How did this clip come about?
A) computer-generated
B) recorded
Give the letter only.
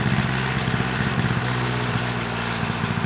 B